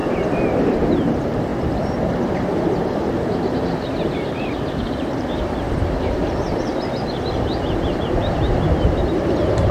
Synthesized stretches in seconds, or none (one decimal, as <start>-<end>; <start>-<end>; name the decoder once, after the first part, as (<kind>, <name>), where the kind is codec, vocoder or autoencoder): 0.7-6.7 (vocoder, BigVGAN v2); 8.0-9.7